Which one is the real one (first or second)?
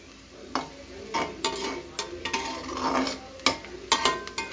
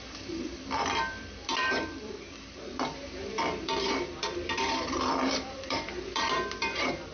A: first